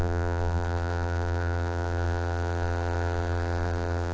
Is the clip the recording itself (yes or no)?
no